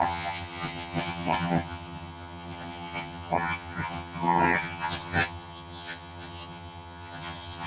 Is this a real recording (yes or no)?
no